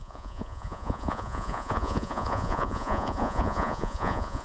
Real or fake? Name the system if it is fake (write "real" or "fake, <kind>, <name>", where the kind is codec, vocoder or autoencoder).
fake, vocoder, Vocos